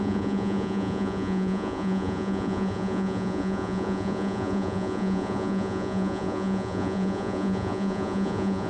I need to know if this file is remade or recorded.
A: remade